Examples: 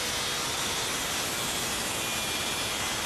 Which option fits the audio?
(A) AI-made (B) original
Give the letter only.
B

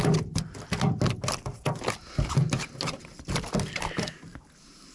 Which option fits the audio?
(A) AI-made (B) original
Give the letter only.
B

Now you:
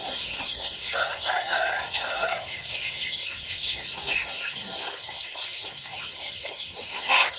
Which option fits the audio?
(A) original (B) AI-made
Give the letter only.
B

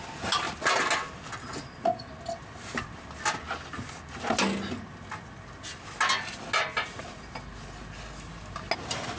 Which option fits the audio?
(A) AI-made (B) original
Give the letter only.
B